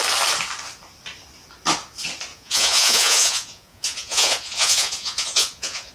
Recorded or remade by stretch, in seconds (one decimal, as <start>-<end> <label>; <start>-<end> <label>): 0.0-2.3 recorded; 2.3-5.9 remade